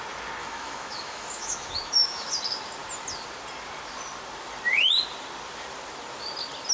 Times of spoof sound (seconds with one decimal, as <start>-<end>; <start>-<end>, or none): 0.4-2.3